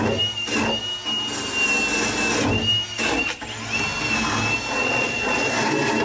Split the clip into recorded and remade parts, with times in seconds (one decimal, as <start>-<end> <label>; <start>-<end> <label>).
0.0-4.8 recorded; 4.8-5.5 remade; 5.5-6.0 recorded